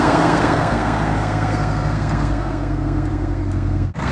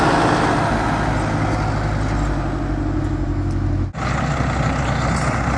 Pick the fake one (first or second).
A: first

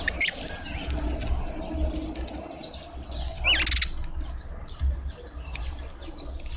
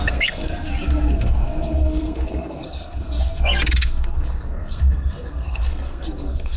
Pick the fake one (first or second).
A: second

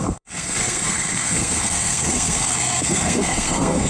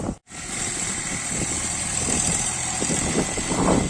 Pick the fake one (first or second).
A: first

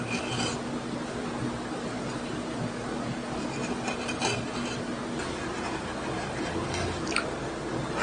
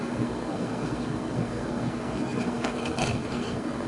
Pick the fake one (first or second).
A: second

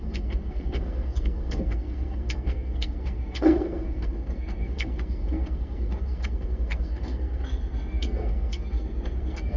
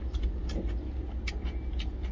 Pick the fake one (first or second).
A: first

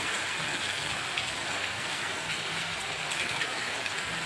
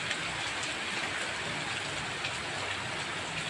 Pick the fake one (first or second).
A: first